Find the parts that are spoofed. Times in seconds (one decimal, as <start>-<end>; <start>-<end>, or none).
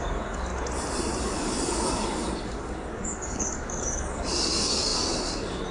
0.0-0.5; 1.2-5.7